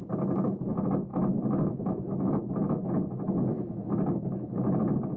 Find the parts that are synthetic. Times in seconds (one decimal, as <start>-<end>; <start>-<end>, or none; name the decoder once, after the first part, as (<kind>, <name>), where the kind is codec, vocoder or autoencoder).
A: 1.1-2.9 (autoencoder, DAC-VAE); 3.5-4.8